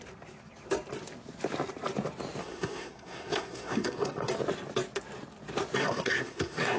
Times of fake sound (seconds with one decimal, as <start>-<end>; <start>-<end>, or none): 2.4-4.3; 5.8-6.8